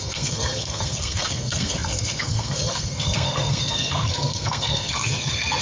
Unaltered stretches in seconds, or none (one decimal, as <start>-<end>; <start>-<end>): none